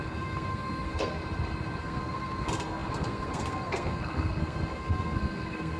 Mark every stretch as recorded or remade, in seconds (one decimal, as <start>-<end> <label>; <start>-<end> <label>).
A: 0.0-1.2 remade; 1.2-1.8 recorded; 1.8-5.8 remade